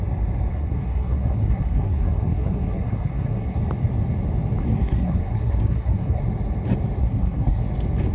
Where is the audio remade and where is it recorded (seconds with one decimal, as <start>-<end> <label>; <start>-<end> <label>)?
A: 0.0-0.5 recorded; 0.5-3.6 remade; 3.6-4.6 recorded; 4.6-6.2 remade; 6.2-7.0 recorded; 7.0-7.6 remade; 7.6-8.1 recorded